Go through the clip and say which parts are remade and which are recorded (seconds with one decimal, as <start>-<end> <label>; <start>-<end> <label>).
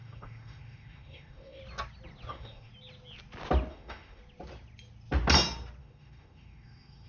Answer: 0.0-1.6 remade; 1.6-2.3 recorded; 2.3-2.7 remade; 2.7-3.7 recorded; 3.7-4.2 remade; 4.2-5.8 recorded; 5.8-7.1 remade